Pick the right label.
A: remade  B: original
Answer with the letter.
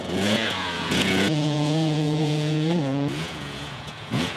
A